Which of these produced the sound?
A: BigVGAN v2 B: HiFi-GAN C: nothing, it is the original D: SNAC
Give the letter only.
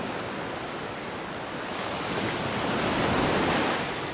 C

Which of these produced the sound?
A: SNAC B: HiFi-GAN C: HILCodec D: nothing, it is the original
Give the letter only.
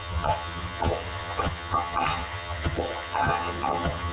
B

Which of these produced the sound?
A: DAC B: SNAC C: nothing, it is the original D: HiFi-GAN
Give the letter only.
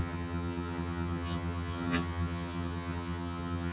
D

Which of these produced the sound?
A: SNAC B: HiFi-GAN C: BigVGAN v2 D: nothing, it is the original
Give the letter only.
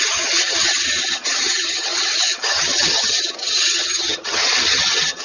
B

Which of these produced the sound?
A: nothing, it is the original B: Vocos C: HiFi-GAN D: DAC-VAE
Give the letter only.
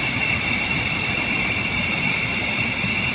A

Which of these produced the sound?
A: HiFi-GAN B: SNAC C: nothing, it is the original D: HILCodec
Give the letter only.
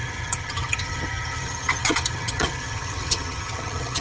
A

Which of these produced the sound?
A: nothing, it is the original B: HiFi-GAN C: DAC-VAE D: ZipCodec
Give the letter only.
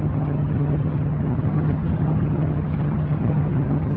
B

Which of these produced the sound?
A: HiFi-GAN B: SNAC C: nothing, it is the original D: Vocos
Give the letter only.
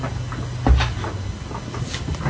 C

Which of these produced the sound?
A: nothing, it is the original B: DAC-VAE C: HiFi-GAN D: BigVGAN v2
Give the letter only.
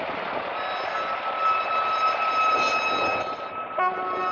A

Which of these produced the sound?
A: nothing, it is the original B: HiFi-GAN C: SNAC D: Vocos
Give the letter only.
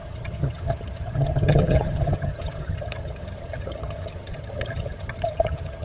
B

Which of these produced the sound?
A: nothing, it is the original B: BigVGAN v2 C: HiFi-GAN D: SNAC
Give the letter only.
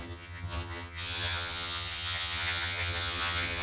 C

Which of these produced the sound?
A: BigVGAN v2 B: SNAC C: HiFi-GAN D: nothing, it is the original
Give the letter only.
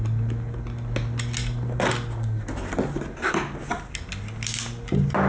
D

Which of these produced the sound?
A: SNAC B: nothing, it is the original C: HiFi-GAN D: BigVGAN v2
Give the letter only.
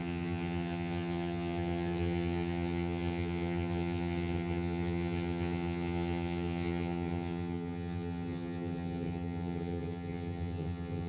C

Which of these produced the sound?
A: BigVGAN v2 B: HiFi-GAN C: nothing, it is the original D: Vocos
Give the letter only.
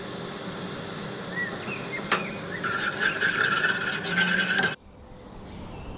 C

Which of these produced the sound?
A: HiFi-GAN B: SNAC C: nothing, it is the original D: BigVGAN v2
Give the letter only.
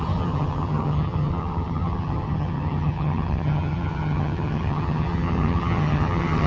A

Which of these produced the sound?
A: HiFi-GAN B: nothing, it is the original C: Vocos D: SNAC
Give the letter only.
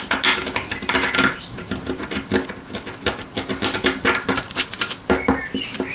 B